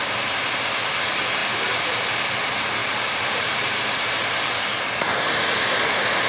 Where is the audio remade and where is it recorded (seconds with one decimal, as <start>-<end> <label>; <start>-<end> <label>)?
0.0-2.8 recorded; 2.8-4.5 remade; 4.5-6.3 recorded